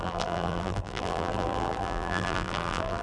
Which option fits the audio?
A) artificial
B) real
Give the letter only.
A